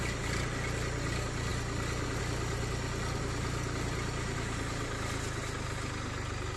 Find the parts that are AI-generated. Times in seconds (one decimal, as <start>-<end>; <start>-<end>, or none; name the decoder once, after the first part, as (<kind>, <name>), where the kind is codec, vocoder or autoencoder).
none